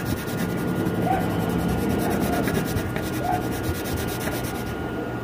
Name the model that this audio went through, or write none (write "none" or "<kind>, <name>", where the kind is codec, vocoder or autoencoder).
none